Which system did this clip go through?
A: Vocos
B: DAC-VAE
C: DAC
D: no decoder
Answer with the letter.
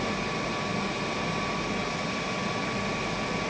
D